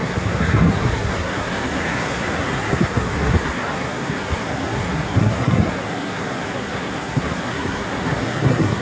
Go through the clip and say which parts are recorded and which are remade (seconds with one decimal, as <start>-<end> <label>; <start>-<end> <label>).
0.0-8.8 remade